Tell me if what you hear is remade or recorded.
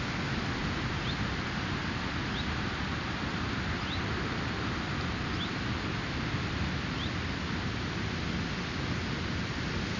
recorded